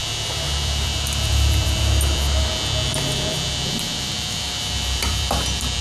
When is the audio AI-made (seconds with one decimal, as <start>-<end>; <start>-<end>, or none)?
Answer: 0.0-2.5; 2.9-5.8